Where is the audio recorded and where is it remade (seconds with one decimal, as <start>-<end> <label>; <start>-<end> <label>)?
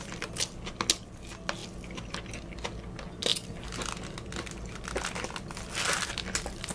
0.0-6.7 recorded